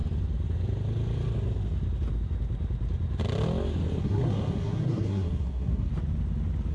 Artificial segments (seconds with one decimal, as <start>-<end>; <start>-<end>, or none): 4.0-5.9